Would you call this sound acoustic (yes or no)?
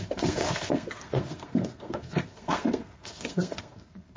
no